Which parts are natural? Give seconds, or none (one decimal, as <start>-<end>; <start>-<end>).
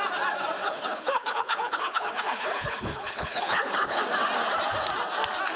0.0-0.6; 4.0-5.6